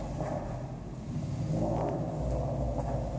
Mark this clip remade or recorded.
recorded